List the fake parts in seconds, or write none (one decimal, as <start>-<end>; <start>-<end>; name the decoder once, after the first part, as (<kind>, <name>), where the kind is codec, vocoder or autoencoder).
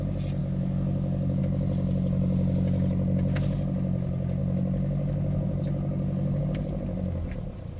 0.4-1.4 (codec, DAC)